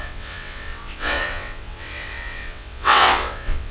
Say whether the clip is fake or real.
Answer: fake